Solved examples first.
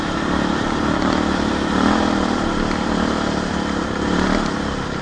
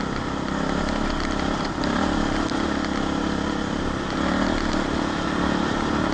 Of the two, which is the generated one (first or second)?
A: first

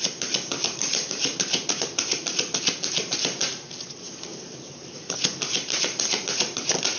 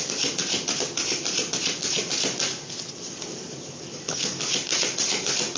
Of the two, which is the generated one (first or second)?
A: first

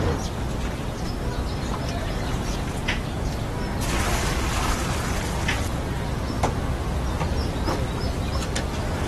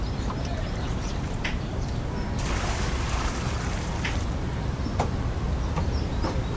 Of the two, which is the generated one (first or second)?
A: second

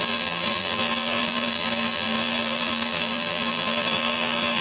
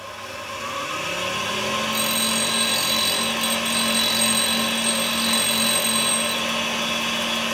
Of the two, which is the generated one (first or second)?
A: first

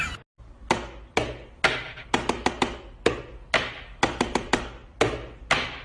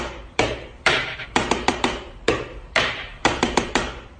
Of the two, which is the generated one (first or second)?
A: second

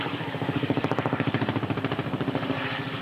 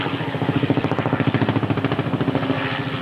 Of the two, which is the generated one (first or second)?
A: first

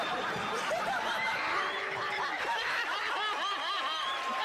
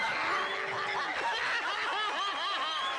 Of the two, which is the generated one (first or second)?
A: first